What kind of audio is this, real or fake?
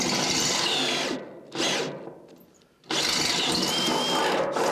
real